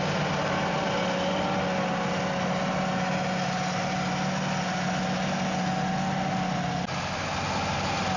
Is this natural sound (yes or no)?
yes